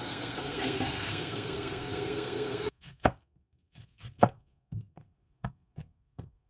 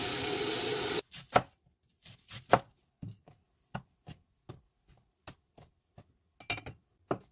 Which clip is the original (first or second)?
second